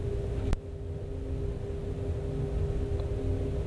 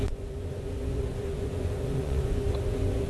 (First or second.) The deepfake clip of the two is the second